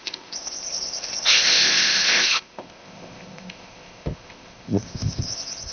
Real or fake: fake